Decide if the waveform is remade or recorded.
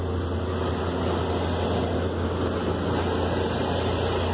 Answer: recorded